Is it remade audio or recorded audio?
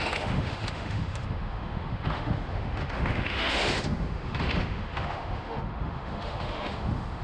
remade